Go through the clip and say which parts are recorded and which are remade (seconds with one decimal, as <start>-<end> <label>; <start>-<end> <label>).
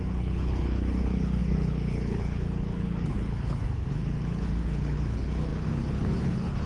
0.0-6.7 remade